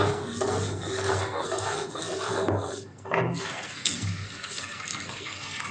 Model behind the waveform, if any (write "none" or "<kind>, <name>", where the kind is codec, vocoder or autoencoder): codec, SNAC